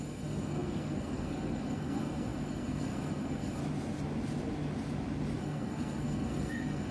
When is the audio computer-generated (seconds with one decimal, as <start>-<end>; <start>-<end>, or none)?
0.0-3.6; 5.4-6.9